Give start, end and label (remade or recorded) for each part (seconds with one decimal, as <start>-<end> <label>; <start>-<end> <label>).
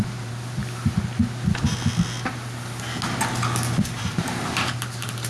0.0-0.6 remade; 0.6-3.8 recorded; 3.8-5.3 remade